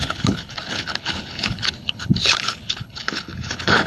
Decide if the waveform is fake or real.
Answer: fake